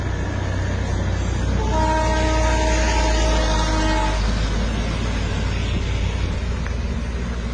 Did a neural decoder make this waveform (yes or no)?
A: no